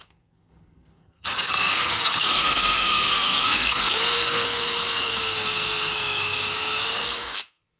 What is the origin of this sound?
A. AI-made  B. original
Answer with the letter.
A